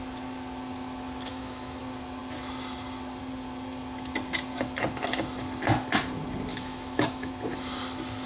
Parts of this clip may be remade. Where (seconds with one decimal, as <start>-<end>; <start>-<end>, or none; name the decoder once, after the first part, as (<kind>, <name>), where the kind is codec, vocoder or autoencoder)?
1.3-1.8 (autoencoder, DAC-VAE); 6.5-7.3